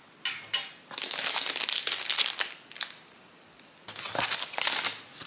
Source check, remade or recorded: recorded